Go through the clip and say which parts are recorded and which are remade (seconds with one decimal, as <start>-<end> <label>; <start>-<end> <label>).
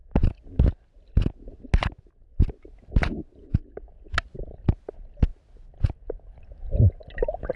0.0-7.6 recorded